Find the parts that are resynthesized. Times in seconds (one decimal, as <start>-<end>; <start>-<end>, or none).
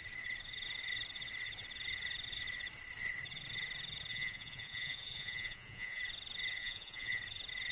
4.1-6.0; 6.6-7.2